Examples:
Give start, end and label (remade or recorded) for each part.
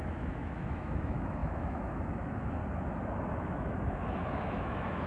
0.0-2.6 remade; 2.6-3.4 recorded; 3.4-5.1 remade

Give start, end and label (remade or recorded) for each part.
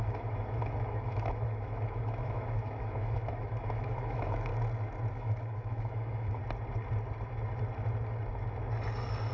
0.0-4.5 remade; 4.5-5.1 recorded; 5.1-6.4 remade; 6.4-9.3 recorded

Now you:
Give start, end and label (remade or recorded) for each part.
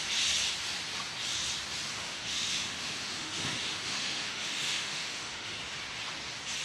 0.0-1.9 recorded; 1.9-5.5 remade; 5.5-6.6 recorded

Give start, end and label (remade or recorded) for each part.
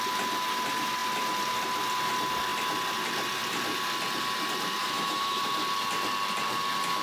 0.0-4.8 recorded; 4.8-5.4 remade; 5.4-7.0 recorded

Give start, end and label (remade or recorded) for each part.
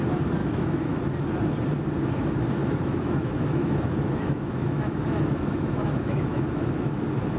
0.0-0.4 recorded; 0.4-1.0 remade; 1.0-2.6 recorded; 2.6-7.0 remade; 7.0-7.4 recorded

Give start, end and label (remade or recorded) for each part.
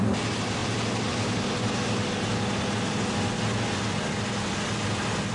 0.0-5.3 recorded